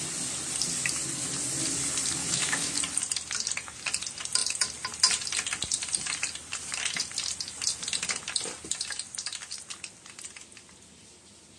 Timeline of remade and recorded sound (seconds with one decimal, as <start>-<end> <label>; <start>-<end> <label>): 0.0-2.2 recorded; 2.2-2.8 remade; 2.8-11.6 recorded